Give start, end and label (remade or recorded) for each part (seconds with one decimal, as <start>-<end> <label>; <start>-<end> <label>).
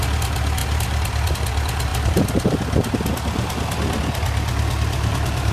0.0-5.5 recorded